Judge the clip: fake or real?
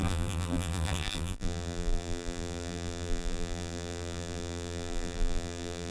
fake